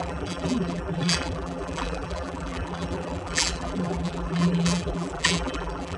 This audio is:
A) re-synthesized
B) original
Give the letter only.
A